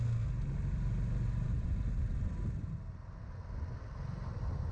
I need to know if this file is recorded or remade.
recorded